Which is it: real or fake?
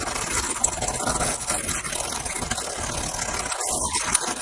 real